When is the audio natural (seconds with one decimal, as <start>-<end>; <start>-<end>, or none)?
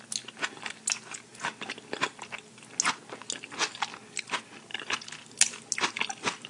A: 0.0-6.5